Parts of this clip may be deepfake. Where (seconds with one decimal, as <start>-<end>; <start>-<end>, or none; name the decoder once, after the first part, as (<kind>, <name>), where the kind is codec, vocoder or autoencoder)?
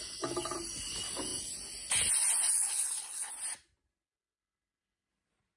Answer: 2.6-3.3 (codec, HILCodec)